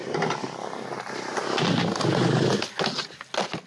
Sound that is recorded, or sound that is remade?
recorded